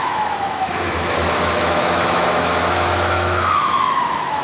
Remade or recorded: remade